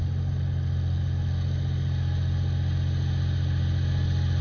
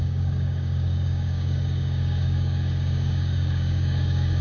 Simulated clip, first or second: second